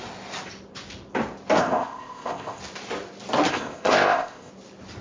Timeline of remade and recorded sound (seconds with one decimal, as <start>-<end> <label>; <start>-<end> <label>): 0.0-1.6 recorded; 1.6-2.6 remade; 2.6-3.5 recorded; 3.5-4.5 remade; 4.5-5.0 recorded

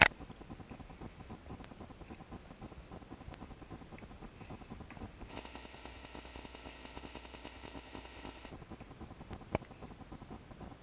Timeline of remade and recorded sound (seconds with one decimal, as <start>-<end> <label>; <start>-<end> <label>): 0.0-5.3 recorded; 5.3-8.5 remade; 8.5-10.8 recorded

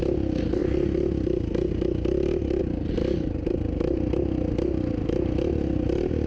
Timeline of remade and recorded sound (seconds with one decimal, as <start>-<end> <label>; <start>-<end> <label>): 0.0-6.3 recorded